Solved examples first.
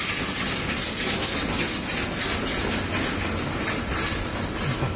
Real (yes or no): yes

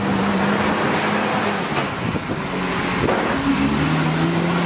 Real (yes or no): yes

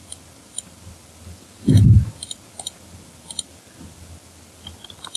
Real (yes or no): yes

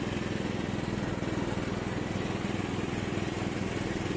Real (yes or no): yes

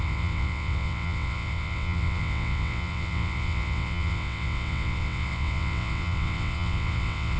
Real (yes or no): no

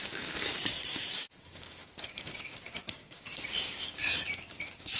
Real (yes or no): no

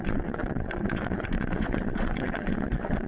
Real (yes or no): no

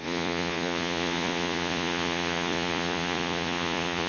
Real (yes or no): no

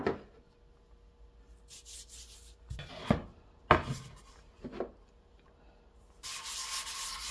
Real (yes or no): yes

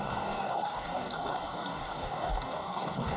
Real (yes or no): no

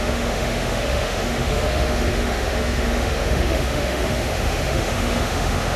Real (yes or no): no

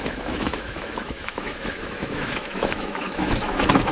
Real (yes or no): no